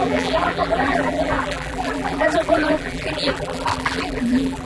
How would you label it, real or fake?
fake